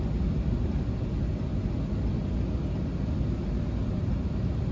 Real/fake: real